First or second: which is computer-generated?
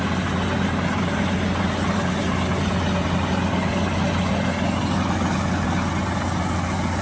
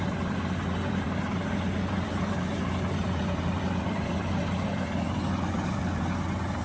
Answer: second